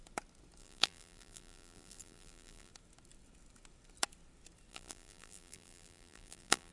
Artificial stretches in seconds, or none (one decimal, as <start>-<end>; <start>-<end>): 0.6-2.7; 4.7-6.7